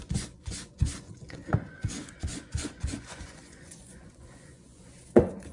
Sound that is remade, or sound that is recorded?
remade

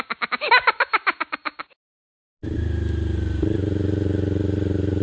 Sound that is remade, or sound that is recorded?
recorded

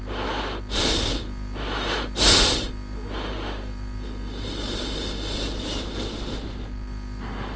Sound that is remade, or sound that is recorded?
recorded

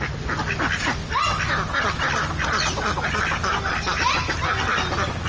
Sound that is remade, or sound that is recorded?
recorded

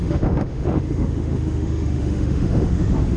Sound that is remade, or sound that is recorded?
remade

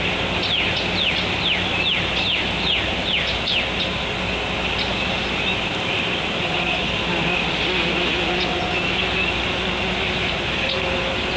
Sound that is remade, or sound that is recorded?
recorded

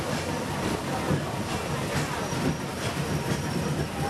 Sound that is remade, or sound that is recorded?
recorded